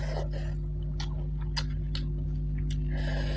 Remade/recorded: recorded